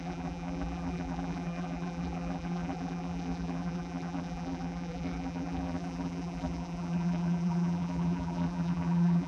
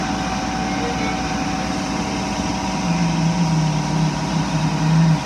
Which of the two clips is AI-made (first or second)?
first